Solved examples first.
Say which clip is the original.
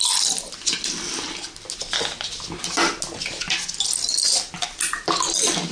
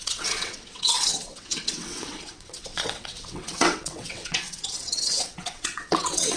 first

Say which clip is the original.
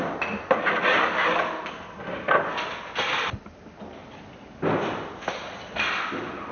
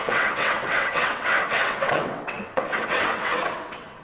first